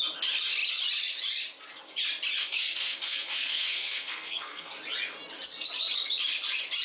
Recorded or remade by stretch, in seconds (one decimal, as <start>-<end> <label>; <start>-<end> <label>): 0.0-2.4 recorded; 2.4-4.7 remade; 4.7-6.8 recorded